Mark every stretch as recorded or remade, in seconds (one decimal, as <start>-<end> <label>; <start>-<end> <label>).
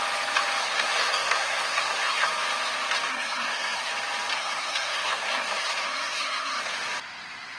0.0-0.6 recorded; 0.6-2.3 remade; 2.3-3.1 recorded; 3.1-3.9 remade; 3.9-4.3 recorded; 4.3-6.6 remade; 6.6-7.6 recorded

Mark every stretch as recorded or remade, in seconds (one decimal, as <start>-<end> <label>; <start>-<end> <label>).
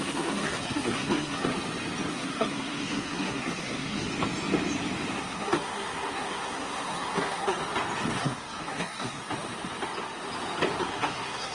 0.0-1.5 remade; 1.5-2.1 recorded; 2.1-4.1 remade; 4.1-5.2 recorded; 5.2-7.6 remade; 7.6-8.2 recorded; 8.2-9.2 remade; 9.2-10.8 recorded; 10.8-11.5 remade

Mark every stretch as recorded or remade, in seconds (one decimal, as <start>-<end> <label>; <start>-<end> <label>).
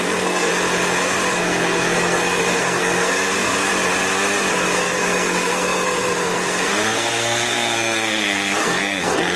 0.0-0.5 remade; 0.5-1.3 recorded; 1.3-3.7 remade; 3.7-4.5 recorded; 4.5-9.4 remade